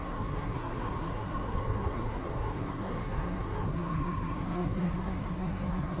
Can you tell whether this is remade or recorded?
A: remade